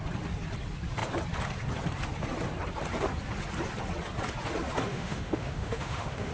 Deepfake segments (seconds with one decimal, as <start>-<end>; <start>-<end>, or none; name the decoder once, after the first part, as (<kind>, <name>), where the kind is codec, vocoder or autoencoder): 4.9-6.3 (autoencoder, DAC-VAE)